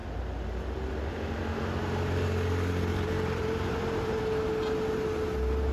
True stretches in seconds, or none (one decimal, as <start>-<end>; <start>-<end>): 0.0-2.9; 4.2-5.7

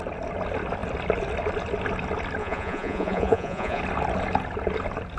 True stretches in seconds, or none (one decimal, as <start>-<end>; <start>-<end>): 0.0-2.4; 3.8-5.2

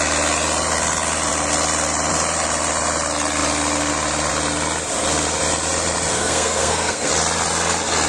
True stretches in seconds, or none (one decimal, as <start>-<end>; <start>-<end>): 0.0-6.1; 7.1-8.1

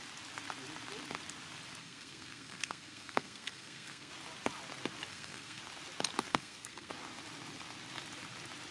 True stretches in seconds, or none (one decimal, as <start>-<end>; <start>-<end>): 0.0-1.8; 4.1-5.1; 5.6-6.3; 6.9-8.7

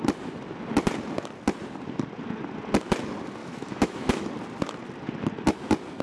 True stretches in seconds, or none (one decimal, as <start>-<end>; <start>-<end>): 0.0-3.4; 4.3-6.0

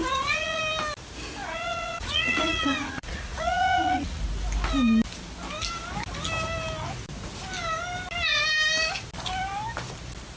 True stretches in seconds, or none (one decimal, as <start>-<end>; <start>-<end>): 0.6-1.4; 4.2-10.4

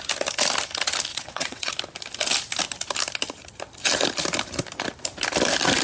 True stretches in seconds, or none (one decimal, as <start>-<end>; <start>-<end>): 0.0-1.1; 1.7-5.8